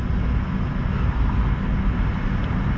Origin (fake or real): real